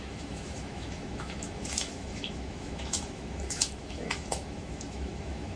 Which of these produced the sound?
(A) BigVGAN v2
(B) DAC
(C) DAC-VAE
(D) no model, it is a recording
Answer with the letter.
C